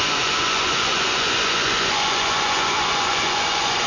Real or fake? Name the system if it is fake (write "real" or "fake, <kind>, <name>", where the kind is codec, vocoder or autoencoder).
fake, vocoder, Vocos